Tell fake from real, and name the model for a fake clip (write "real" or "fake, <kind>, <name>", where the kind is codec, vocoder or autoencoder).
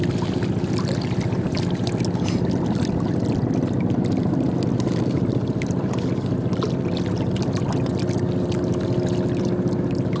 real